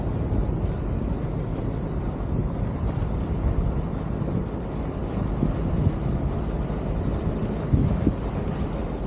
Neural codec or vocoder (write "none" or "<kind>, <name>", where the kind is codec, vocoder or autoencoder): none